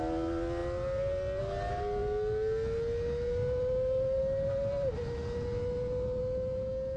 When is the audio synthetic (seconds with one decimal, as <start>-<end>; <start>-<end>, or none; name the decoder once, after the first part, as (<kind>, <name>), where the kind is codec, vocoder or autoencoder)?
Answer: none